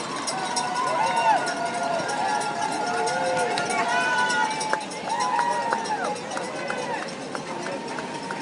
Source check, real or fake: real